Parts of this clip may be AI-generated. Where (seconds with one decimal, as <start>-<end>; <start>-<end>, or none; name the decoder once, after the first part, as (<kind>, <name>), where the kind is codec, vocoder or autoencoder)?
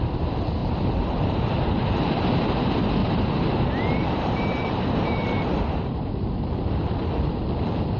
0.6-1.9 (vocoder, BigVGAN v2); 3.0-6.8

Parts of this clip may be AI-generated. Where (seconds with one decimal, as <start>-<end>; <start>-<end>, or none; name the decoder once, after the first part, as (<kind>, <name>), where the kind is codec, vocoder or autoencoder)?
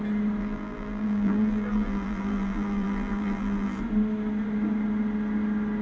0.4-3.8 (vocoder, BigVGAN v2)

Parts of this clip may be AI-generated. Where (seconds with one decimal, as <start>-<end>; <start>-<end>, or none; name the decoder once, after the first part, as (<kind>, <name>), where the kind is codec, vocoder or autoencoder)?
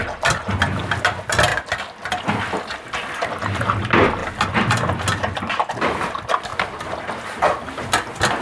0.0-0.8 (vocoder, BigVGAN v2)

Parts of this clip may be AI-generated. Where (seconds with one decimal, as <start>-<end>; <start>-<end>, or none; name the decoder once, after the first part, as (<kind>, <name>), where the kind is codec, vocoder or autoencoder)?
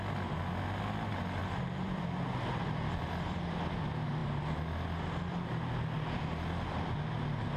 1.4-3.5 (vocoder, BigVGAN v2)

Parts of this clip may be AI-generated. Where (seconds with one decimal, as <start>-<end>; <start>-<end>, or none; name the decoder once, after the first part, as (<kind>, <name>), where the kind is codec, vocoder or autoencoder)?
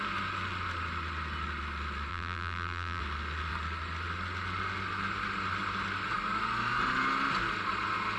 2.1-3.0 (vocoder, BigVGAN v2)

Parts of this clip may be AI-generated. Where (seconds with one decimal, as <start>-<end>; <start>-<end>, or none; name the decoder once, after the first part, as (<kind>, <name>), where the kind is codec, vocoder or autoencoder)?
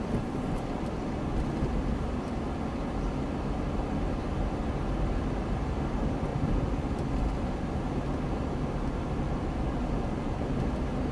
6.3-7.8 (vocoder, BigVGAN v2)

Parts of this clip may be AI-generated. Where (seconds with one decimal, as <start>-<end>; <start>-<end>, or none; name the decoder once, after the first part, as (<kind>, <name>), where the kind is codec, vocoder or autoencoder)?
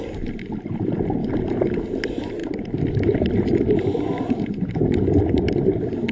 1.2-1.8 (vocoder, BigVGAN v2); 2.4-5.4